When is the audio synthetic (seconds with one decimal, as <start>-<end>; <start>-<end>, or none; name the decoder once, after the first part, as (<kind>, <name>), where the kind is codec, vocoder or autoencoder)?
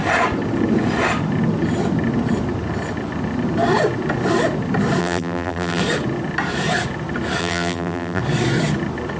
5.0-5.8 (vocoder, BigVGAN v2); 7.4-8.2